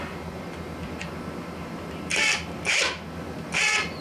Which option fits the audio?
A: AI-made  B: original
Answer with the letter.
B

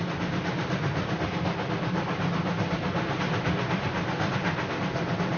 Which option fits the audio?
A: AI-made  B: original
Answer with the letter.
B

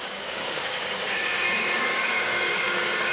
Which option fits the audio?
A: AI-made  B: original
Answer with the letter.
A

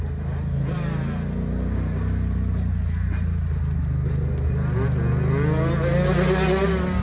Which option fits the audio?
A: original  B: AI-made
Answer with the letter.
A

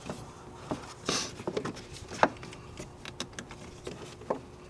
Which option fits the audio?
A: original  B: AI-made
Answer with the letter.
A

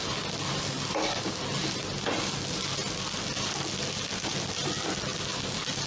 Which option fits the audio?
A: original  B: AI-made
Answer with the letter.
A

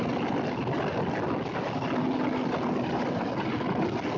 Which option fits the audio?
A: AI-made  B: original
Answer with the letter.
B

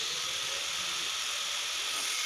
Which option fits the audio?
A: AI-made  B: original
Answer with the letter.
B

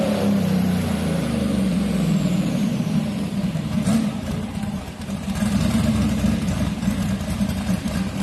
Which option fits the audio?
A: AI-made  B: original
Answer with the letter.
A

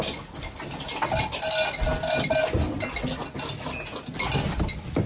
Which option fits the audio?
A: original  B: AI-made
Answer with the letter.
A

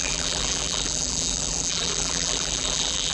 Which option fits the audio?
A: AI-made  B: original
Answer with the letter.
A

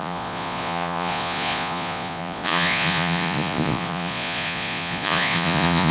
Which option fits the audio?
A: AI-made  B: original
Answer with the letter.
A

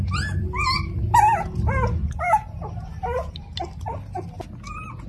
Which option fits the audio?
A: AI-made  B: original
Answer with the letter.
B